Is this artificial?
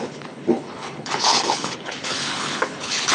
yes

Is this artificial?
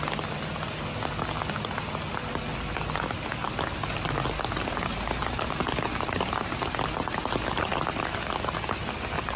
no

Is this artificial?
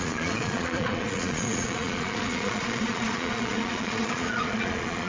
yes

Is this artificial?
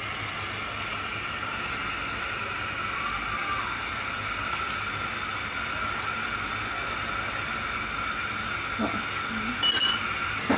no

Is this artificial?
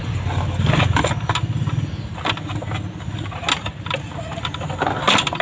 no